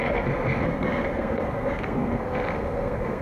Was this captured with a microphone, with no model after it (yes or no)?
no